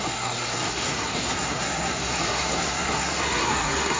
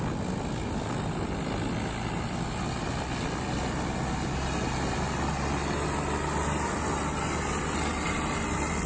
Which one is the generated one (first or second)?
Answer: first